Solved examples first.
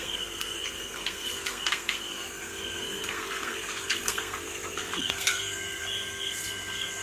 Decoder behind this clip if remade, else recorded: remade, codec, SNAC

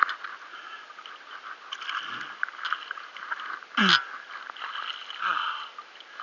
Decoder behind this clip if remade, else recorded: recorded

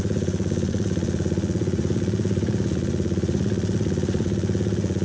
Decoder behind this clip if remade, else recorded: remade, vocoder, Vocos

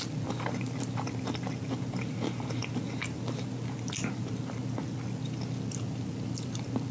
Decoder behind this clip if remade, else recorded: recorded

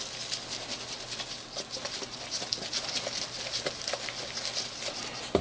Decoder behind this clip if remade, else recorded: recorded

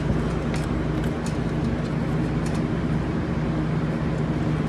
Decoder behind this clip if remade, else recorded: recorded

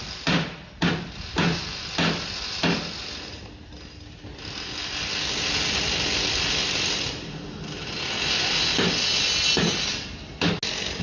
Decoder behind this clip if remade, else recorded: recorded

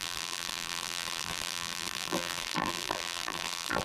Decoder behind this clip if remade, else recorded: remade, vocoder, BigVGAN v2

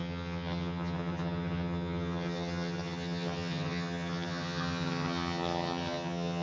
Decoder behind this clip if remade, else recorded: remade, vocoder, HiFi-GAN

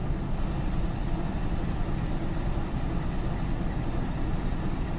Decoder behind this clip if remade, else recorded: recorded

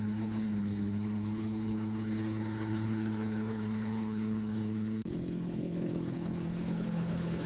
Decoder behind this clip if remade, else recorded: remade, codec, HILCodec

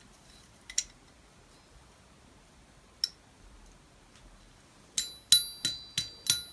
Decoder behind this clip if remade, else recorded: recorded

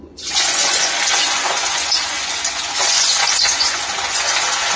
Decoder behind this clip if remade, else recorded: remade, vocoder, Vocos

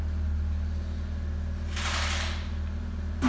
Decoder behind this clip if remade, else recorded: recorded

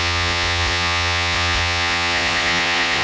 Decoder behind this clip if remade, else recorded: remade, vocoder, Vocos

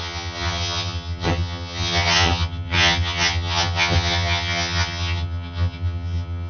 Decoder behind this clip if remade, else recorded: remade, vocoder, HiFi-GAN